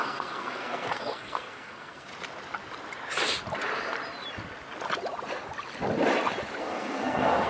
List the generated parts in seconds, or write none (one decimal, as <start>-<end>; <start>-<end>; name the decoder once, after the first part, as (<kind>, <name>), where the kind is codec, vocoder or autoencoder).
0.0-2.1 (codec, SNAC); 6.6-7.5